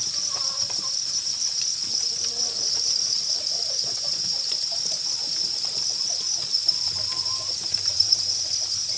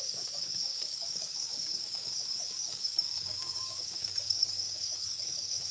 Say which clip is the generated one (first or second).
second